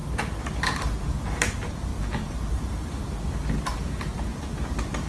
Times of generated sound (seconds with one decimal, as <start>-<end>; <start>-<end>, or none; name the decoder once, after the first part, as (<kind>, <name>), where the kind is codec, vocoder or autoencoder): 0.0-0.8 (vocoder, BigVGAN v2); 1.9-5.1